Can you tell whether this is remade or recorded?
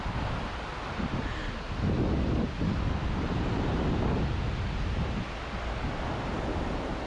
recorded